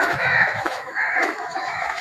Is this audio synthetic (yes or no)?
yes